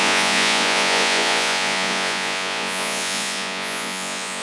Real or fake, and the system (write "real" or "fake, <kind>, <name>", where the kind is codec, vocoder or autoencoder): fake, vocoder, Vocos